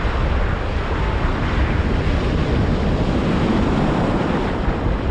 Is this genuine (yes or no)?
no